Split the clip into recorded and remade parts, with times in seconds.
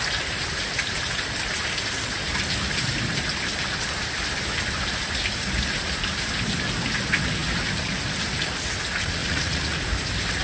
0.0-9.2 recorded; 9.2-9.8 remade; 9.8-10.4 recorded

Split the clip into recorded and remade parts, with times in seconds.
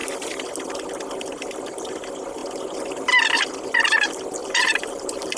0.0-4.4 recorded; 4.4-5.4 remade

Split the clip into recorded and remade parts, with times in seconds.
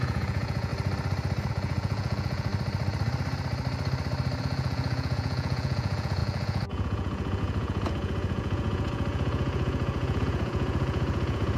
0.0-0.7 remade; 0.7-1.5 recorded; 1.5-2.5 remade; 2.5-4.4 recorded; 4.4-11.6 remade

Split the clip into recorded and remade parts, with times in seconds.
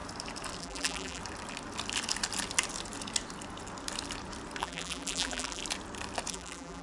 0.0-0.6 recorded; 0.6-1.2 remade; 1.2-4.6 recorded; 4.6-5.6 remade; 5.6-6.3 recorded; 6.3-6.8 remade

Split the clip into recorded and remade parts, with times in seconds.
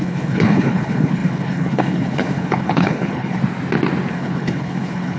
0.0-3.4 remade; 3.4-4.1 recorded; 4.1-5.2 remade